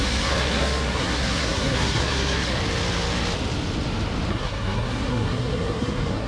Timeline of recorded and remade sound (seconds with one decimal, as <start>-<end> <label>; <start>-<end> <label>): 0.0-2.5 remade; 2.5-4.3 recorded; 4.3-6.3 remade